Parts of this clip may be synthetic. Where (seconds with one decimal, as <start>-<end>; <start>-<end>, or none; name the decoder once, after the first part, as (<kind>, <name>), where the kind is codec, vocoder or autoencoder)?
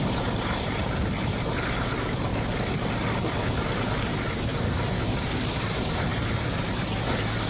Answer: 0.0-2.3 (vocoder, BigVGAN v2); 4.0-4.5; 5.6-7.5